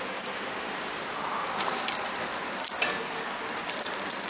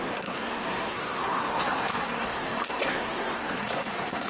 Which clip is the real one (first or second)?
first